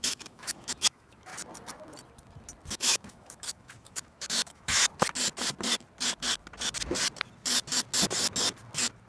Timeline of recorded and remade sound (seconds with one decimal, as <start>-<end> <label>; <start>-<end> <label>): 0.0-1.3 remade; 1.3-2.7 recorded; 2.7-4.8 remade; 4.8-9.1 recorded